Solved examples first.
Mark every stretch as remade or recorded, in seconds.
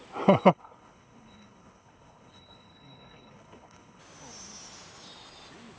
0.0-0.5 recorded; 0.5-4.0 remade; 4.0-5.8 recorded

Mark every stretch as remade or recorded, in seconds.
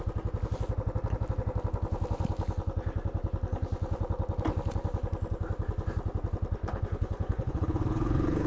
0.0-6.6 recorded; 6.6-8.5 remade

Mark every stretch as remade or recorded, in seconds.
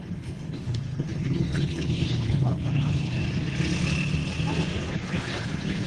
0.0-3.2 remade; 3.2-4.9 recorded; 4.9-5.9 remade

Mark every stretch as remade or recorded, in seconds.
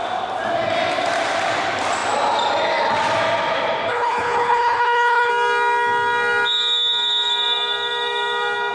0.0-3.9 recorded; 3.9-5.3 remade; 5.3-8.7 recorded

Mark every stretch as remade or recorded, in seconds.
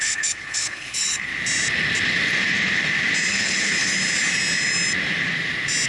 0.0-1.3 remade; 1.3-3.3 recorded; 3.3-3.9 remade; 3.9-5.9 recorded